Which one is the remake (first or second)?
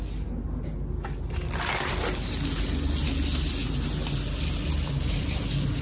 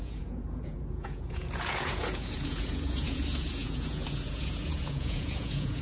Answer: second